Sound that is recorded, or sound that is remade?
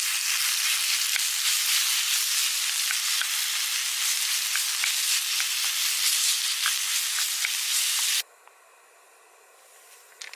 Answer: recorded